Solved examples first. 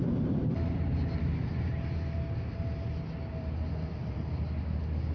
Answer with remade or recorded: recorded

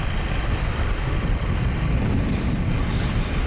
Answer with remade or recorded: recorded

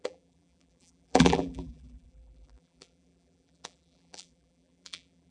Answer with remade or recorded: remade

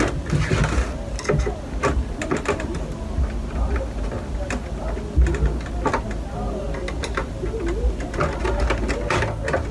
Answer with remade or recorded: recorded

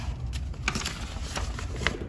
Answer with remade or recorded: recorded